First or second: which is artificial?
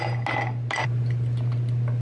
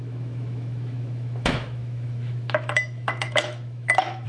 second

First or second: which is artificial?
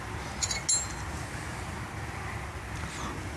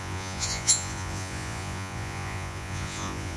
second